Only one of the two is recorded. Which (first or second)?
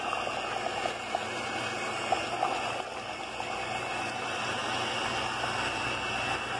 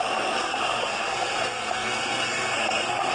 first